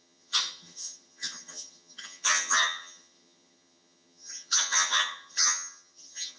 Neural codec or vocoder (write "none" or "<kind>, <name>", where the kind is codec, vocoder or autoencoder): vocoder, HiFi-GAN